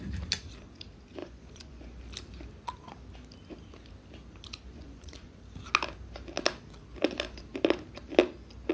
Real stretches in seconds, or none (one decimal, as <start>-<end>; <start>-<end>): 0.0-1.2; 2.0-4.7; 5.4-8.7

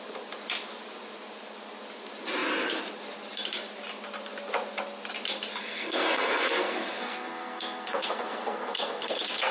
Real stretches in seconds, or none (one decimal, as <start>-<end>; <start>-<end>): 0.0-5.6